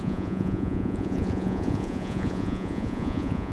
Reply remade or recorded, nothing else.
remade